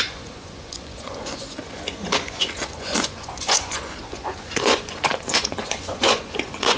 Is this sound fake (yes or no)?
yes